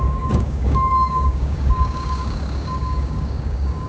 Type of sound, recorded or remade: remade